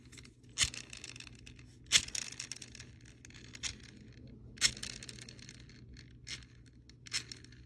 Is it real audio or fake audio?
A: real